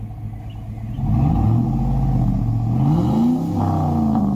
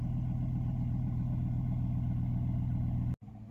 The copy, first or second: second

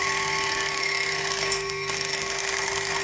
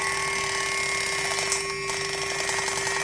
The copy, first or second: first